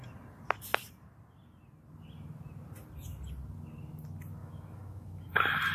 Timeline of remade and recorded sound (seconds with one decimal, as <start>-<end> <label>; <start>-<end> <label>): 0.0-4.4 recorded; 4.4-5.3 remade; 5.3-5.7 recorded